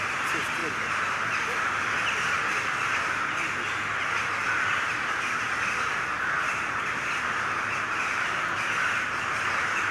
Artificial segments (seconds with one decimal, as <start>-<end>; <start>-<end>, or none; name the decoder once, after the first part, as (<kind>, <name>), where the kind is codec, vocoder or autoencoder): none